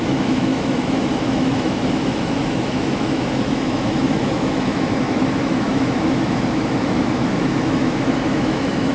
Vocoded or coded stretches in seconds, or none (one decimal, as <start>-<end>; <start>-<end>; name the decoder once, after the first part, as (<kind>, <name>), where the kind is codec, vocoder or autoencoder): 0.0-8.9 (autoencoder, DAC-VAE)